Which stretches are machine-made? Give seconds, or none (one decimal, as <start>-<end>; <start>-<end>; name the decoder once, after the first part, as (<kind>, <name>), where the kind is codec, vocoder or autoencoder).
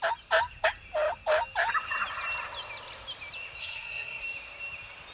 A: 3.6-4.2 (codec, SNAC)